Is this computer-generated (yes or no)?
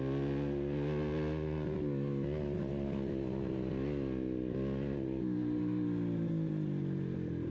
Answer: no